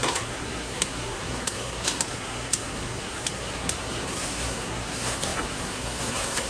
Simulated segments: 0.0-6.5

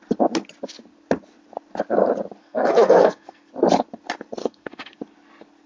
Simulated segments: 2.4-3.5; 4.4-5.0

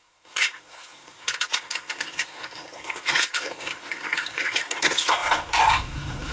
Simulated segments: 0.0-6.3